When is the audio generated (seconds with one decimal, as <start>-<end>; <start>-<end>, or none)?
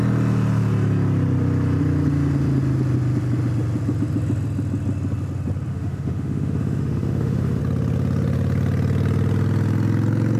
5.7-7.6